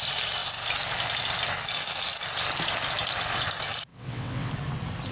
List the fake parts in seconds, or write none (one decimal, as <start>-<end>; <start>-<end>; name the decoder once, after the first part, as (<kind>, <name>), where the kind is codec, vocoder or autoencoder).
3.9-4.5 (vocoder, WaveNeXt)